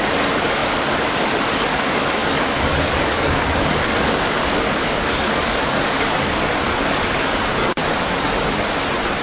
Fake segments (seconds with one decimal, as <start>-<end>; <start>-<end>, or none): 0.0-7.8